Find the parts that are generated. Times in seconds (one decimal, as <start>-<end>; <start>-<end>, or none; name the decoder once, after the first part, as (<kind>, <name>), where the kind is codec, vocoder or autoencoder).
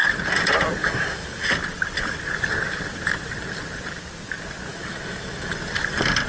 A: 0.8-1.5 (autoencoder, DAC-VAE); 4.7-5.5